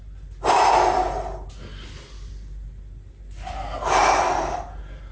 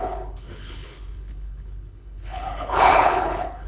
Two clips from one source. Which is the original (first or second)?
first